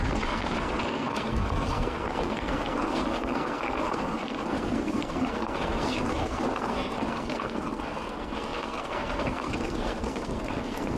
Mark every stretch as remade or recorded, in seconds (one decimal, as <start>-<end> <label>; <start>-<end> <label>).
0.0-11.0 remade